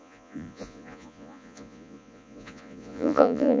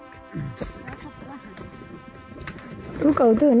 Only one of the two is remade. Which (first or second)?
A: first